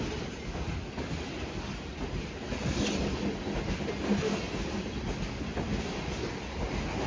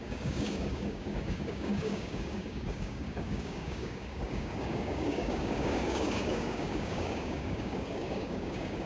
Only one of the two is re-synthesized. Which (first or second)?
second